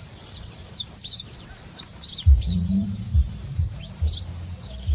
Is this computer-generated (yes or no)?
yes